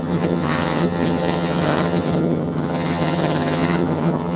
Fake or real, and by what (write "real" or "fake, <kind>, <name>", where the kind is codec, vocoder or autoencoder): fake, vocoder, HiFi-GAN